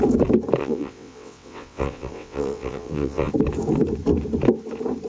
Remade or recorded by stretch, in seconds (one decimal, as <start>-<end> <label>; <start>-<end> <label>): 0.0-0.6 recorded; 0.6-3.3 remade; 3.3-5.1 recorded